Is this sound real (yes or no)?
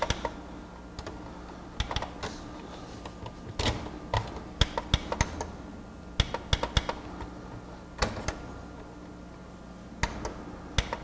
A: yes